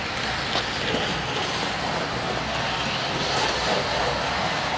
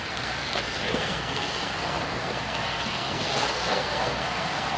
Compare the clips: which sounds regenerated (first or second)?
second